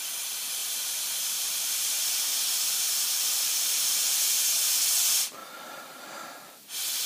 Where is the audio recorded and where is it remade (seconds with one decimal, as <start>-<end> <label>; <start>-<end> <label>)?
0.0-0.6 recorded; 0.6-4.6 remade; 4.6-5.4 recorded; 5.4-6.0 remade; 6.0-7.1 recorded